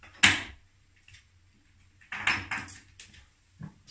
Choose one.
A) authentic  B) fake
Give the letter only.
A